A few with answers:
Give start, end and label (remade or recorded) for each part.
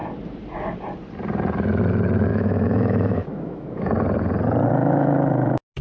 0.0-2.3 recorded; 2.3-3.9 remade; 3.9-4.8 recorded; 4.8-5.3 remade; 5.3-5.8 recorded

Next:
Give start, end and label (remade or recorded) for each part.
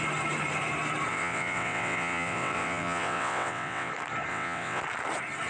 0.0-1.1 recorded; 1.1-3.9 remade; 3.9-4.3 recorded; 4.3-4.8 remade; 4.8-5.5 recorded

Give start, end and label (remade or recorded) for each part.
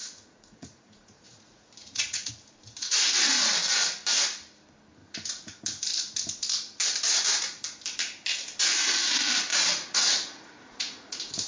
0.0-2.3 remade; 2.3-2.8 recorded; 2.8-3.5 remade; 3.5-5.0 recorded; 5.0-5.6 remade; 5.6-9.5 recorded; 9.5-11.5 remade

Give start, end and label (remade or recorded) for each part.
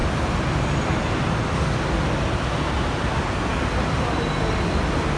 0.0-5.2 recorded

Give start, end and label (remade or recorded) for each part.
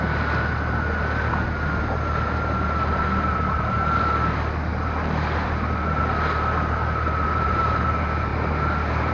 0.0-9.1 recorded